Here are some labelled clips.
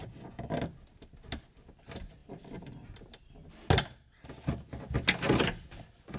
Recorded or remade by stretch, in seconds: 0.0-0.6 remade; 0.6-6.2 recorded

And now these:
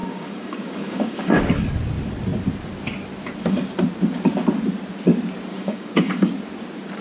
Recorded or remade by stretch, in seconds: 0.0-1.4 remade; 1.4-5.5 recorded; 5.5-6.3 remade; 6.3-7.0 recorded

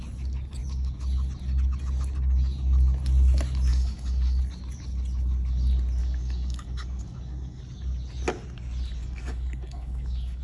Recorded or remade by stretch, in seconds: 0.0-3.7 recorded; 3.7-4.4 remade; 4.4-6.0 recorded; 6.0-7.6 remade; 7.6-9.0 recorded; 9.0-10.4 remade

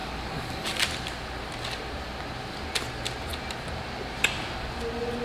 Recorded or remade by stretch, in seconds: 0.0-0.8 remade; 0.8-5.2 recorded

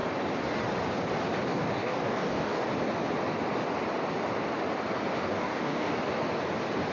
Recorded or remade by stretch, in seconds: 0.0-1.5 recorded; 1.5-2.7 remade; 2.7-5.3 recorded; 5.3-5.9 remade; 5.9-6.9 recorded